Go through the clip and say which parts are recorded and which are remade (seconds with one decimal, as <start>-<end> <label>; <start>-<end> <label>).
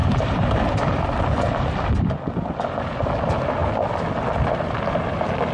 0.0-1.0 remade; 1.0-5.5 recorded